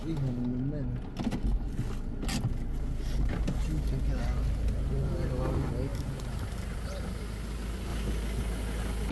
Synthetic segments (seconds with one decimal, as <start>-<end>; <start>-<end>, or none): 5.9-7.2